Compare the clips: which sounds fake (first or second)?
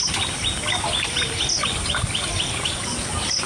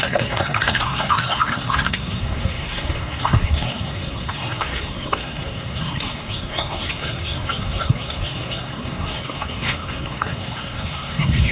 second